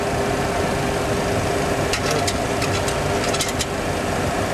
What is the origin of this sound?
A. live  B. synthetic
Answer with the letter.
A